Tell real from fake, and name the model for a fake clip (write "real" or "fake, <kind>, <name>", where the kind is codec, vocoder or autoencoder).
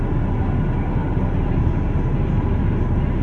real